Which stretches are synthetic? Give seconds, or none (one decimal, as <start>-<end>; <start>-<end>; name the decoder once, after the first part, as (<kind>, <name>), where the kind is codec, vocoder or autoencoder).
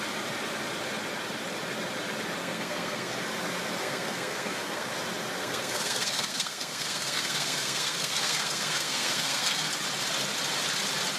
2.4-3.1 (codec, SNAC); 3.8-4.9; 5.4-9.7